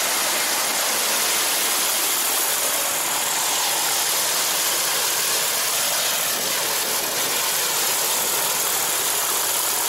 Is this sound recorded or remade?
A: recorded